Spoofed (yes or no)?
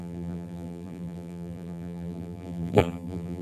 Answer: yes